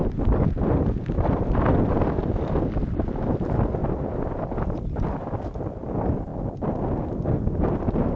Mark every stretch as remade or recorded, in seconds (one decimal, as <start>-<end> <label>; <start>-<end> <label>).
0.0-1.7 remade; 1.7-3.8 recorded; 3.8-4.8 remade; 4.8-8.2 recorded